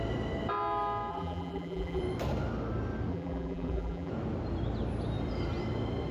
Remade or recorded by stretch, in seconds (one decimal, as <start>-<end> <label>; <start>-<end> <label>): 0.0-1.1 recorded; 1.1-2.0 remade; 2.0-3.1 recorded; 3.1-4.1 remade; 4.1-6.1 recorded